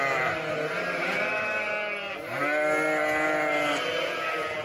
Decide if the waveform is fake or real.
real